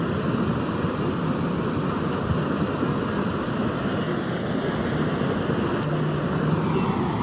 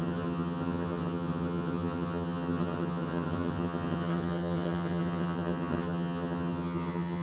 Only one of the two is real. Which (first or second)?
first